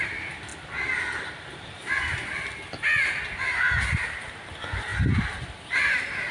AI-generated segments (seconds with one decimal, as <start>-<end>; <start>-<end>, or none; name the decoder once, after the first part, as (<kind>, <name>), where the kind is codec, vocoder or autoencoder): none